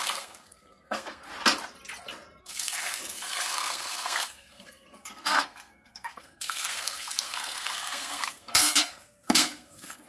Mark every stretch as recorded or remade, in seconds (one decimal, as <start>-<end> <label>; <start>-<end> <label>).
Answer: 0.0-1.3 remade; 1.3-2.4 recorded; 2.4-10.1 remade